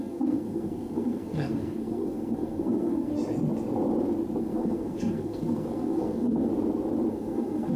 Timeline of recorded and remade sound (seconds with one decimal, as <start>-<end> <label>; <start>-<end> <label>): 0.0-3.1 remade; 3.1-4.4 recorded; 4.4-6.5 remade; 6.5-7.1 recorded; 7.1-7.8 remade